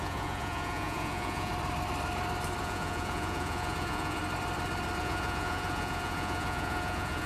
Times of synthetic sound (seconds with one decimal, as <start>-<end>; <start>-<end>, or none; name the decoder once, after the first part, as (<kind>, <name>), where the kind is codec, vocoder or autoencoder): 0.0-1.5 (vocoder, Vocos); 2.6-4.2; 5.0-7.3